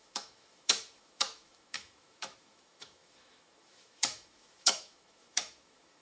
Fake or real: fake